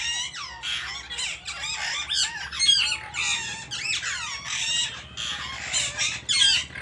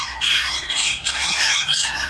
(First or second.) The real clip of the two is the first